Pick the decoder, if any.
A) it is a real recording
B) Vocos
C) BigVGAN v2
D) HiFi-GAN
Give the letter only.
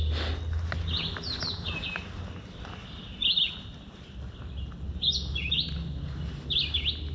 A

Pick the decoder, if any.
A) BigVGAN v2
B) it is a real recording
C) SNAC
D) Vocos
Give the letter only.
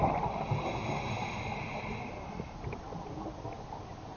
B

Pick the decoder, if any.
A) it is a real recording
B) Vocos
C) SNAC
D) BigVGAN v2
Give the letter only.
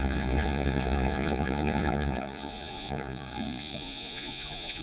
B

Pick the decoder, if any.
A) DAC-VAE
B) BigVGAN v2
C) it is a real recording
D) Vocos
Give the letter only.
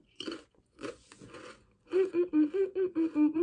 D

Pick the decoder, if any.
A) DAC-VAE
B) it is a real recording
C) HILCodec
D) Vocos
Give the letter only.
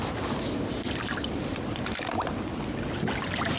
B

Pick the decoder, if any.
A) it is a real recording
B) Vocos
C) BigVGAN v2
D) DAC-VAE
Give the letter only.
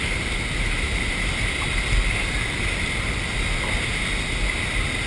A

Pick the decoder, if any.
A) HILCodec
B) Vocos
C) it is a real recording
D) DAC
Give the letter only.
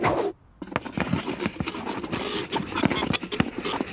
C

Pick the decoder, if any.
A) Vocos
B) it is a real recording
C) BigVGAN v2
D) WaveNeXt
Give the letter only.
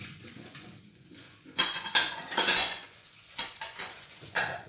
A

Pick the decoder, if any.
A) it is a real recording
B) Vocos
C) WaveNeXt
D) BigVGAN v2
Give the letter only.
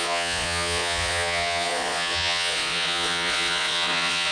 B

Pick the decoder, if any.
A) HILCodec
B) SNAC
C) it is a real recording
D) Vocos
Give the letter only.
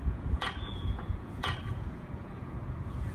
D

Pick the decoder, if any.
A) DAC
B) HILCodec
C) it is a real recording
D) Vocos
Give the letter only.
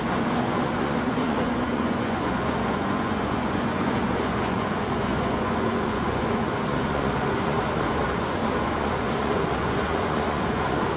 D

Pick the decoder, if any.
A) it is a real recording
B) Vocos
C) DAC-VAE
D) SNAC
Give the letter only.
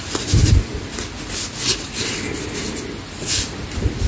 A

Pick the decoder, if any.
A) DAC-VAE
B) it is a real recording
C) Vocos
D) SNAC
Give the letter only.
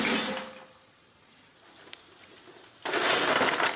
B